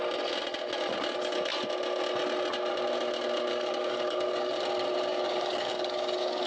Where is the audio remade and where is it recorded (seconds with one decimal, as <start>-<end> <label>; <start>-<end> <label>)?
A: 0.0-3.5 recorded; 3.5-4.5 remade; 4.5-5.1 recorded; 5.1-6.5 remade